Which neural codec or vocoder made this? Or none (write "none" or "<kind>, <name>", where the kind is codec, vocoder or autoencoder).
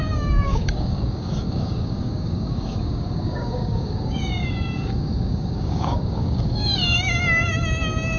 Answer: codec, DAC